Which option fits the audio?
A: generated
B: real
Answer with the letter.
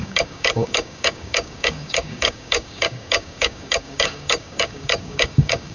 A